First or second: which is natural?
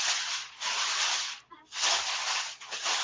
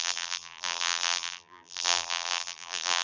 first